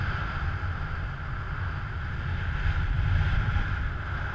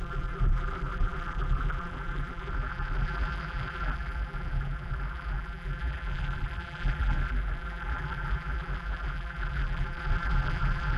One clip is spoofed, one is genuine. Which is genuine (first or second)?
first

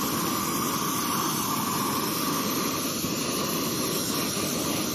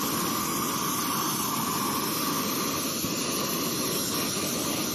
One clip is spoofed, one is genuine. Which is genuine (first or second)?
second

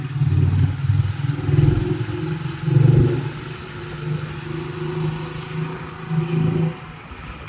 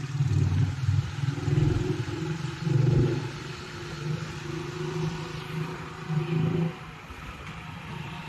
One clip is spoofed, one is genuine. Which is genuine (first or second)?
first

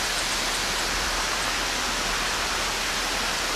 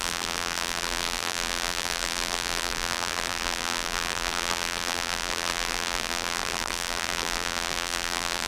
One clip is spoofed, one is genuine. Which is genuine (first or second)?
first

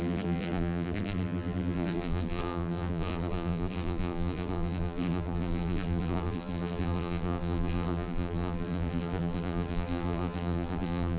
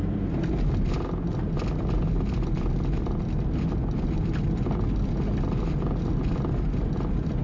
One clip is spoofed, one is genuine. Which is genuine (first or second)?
second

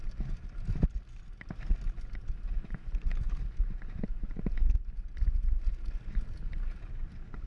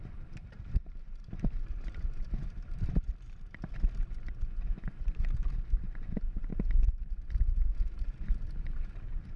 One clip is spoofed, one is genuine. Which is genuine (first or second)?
first